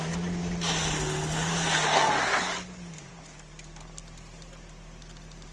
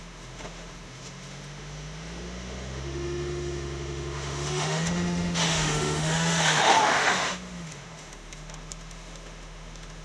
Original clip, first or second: first